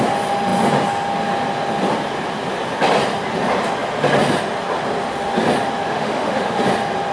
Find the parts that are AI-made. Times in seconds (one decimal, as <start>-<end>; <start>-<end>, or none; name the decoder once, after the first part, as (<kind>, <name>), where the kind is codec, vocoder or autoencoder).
5.9-6.6 (autoencoder, DAC-VAE)